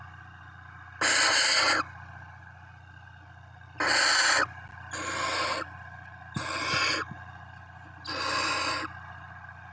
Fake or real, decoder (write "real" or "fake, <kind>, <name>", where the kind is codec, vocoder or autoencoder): real